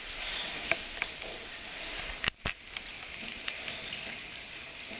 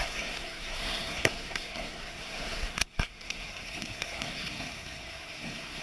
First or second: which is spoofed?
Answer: second